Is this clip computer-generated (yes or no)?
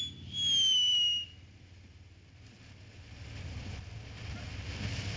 no